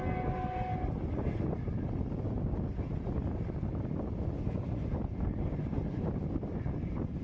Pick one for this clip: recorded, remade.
recorded